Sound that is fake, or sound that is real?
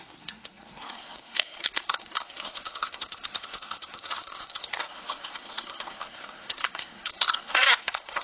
fake